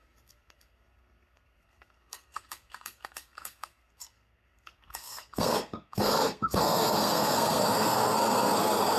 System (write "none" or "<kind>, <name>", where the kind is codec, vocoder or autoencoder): codec, SNAC